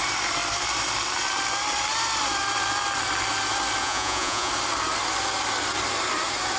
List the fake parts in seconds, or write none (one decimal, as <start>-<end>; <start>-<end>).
3.8-4.5